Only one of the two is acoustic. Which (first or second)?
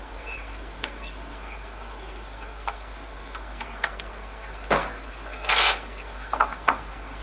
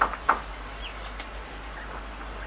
second